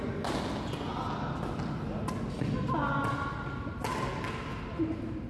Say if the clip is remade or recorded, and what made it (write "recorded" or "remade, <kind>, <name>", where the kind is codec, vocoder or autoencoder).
recorded